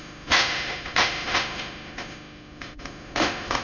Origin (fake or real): fake